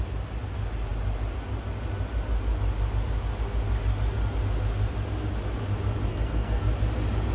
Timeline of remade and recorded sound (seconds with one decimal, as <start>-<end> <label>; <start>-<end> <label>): 0.0-6.1 recorded; 6.1-6.6 remade; 6.6-7.3 recorded